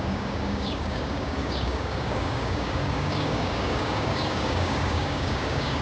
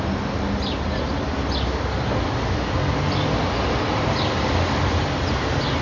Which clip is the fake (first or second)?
first